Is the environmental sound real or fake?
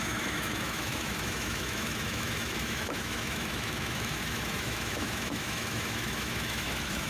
fake